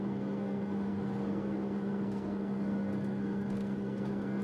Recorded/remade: remade